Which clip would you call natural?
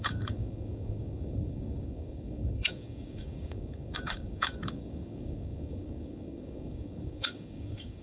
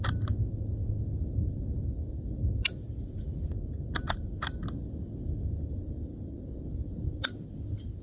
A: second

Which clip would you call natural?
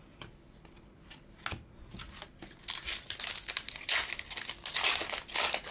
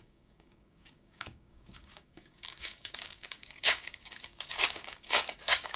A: first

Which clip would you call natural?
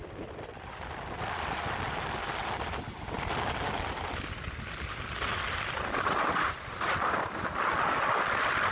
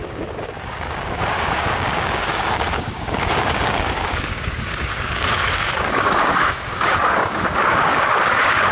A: first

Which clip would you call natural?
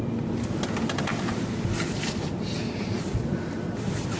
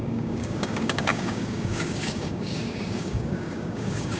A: first